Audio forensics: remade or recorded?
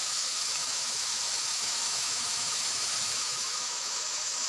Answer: remade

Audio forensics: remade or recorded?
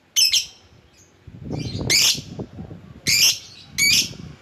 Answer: recorded